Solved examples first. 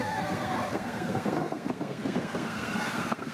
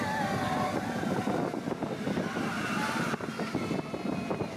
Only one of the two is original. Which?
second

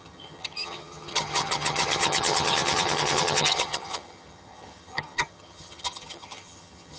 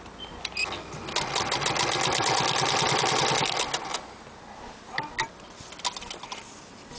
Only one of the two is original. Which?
second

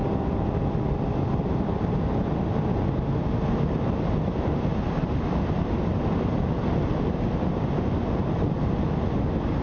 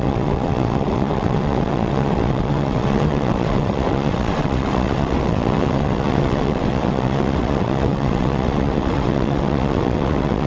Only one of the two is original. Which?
first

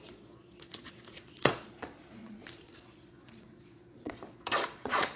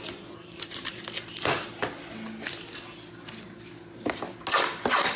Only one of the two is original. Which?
second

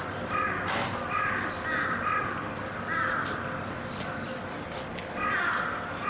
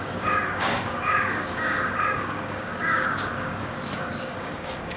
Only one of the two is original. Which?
first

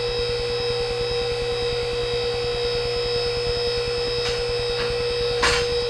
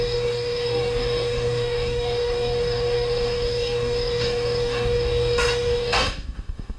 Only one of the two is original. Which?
first